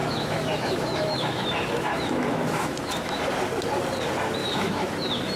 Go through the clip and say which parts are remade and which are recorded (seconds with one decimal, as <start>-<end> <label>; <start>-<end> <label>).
0.0-3.2 remade; 3.2-4.4 recorded; 4.4-4.9 remade; 4.9-5.4 recorded